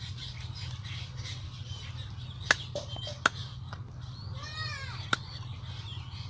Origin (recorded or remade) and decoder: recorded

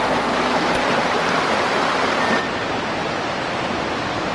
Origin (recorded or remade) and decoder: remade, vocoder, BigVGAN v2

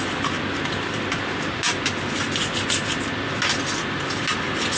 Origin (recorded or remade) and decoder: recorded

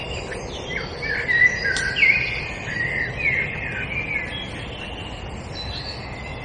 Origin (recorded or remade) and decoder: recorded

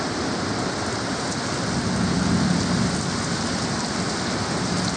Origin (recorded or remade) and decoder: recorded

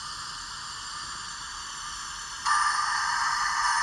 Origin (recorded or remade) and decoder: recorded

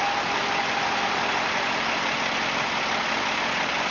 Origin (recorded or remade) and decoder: recorded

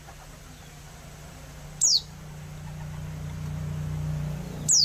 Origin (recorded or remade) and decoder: recorded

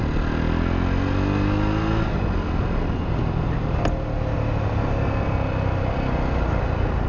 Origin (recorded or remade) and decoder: recorded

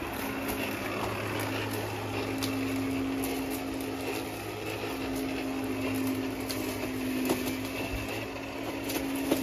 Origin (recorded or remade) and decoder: recorded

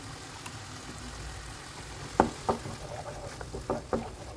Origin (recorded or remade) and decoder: recorded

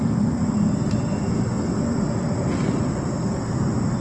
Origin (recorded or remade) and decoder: recorded